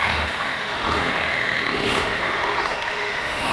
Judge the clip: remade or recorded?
remade